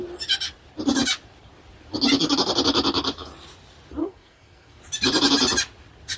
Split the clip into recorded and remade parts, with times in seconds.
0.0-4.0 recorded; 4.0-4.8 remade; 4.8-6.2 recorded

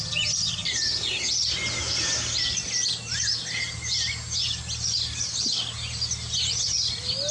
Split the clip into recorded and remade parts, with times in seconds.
0.0-7.3 recorded